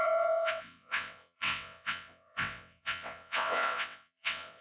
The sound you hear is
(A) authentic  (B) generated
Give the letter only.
B